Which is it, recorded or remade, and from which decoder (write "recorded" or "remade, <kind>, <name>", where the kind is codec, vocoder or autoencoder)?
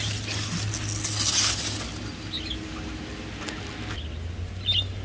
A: recorded